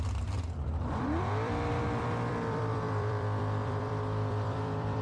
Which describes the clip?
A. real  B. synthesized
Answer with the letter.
B